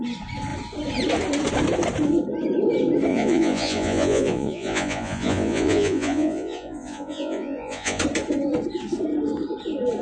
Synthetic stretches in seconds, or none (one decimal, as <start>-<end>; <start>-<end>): 3.1-8.0